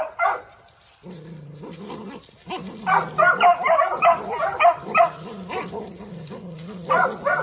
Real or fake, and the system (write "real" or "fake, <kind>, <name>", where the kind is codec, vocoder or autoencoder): real